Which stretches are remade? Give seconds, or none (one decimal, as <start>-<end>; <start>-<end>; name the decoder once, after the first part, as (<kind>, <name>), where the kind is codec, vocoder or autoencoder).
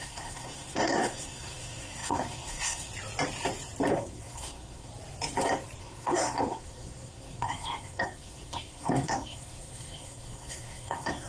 0.0-2.9 (codec, SNAC); 3.9-4.9; 5.8-11.3